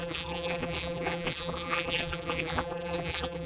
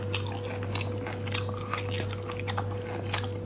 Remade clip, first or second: first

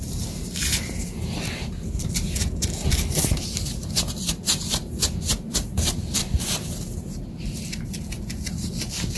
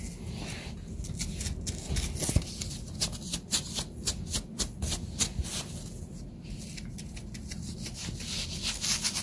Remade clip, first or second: first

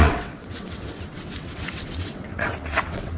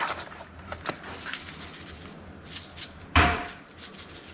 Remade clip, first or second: first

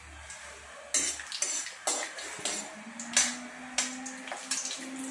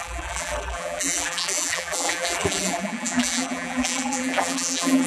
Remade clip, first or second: second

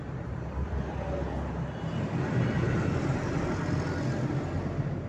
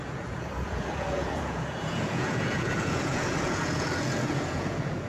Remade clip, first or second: second